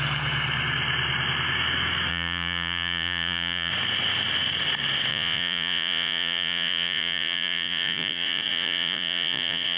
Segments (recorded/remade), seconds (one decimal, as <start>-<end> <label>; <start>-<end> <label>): 0.0-2.1 recorded; 2.1-3.7 remade; 3.7-5.1 recorded; 5.1-9.8 remade